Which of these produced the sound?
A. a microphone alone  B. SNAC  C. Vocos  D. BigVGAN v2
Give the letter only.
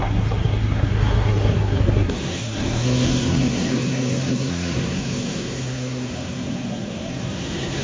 B